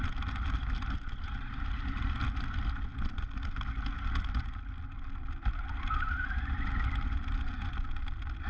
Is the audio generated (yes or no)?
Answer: no